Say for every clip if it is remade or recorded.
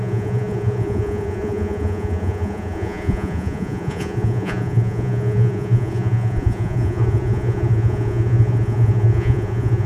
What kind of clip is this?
remade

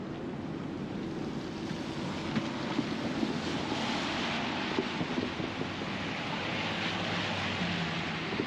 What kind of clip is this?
recorded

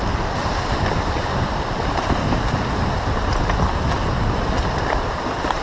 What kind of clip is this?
recorded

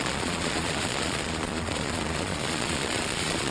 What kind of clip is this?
remade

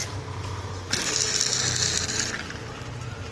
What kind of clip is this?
recorded